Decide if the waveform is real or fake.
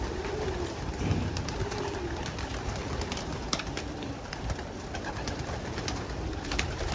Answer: fake